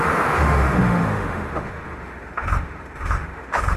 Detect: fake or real fake